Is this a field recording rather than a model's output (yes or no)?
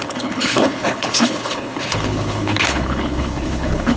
no